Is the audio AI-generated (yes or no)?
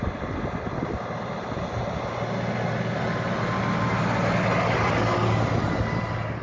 no